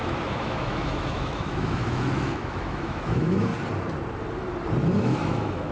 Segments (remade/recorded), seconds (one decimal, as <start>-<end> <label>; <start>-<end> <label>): 0.0-3.5 remade; 3.5-5.0 recorded; 5.0-5.7 remade